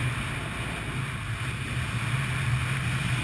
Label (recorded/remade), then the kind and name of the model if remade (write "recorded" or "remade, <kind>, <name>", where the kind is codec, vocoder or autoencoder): recorded